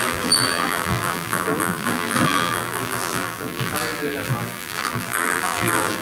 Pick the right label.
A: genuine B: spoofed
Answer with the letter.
B